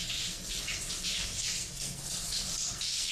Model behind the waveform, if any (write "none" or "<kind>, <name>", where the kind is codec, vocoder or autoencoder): codec, SNAC